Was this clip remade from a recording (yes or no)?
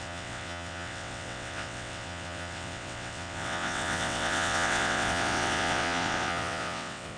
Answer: yes